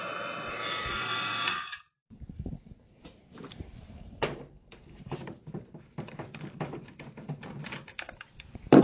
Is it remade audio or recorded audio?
remade